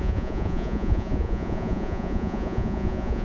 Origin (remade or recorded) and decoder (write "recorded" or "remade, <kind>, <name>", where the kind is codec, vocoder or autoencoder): remade, vocoder, Vocos